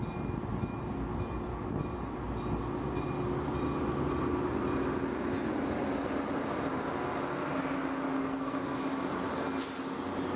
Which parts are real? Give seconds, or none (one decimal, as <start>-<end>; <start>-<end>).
0.0-8.2; 8.8-10.4